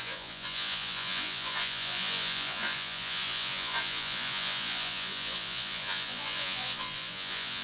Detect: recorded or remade remade